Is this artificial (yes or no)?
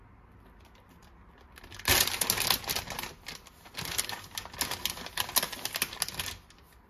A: no